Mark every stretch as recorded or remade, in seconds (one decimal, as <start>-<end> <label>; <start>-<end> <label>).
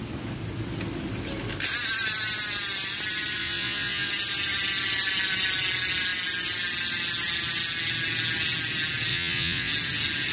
0.0-3.4 recorded; 3.4-4.1 remade; 4.1-9.1 recorded; 9.1-9.7 remade; 9.7-10.3 recorded